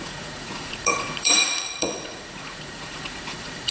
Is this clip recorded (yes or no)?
no